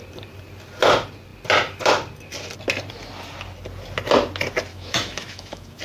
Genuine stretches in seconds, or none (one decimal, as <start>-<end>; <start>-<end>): 0.0-4.7